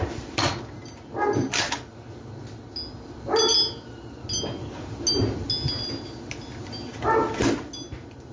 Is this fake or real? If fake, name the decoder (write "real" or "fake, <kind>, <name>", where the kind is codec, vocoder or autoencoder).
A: real